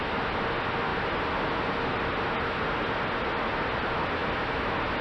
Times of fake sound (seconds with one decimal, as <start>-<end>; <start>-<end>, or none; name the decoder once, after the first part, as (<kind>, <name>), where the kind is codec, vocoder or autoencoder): none